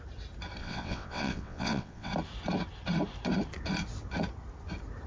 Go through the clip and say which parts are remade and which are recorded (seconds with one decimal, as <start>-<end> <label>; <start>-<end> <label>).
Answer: 0.0-0.6 recorded; 0.6-2.1 remade; 2.1-5.1 recorded